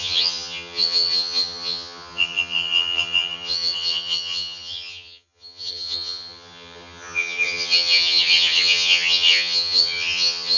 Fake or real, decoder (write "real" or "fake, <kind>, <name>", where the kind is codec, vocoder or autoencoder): fake, vocoder, HiFi-GAN